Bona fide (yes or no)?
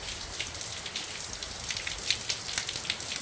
yes